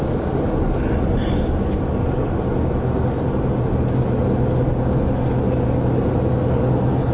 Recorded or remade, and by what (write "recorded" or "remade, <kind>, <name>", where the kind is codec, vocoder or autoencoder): recorded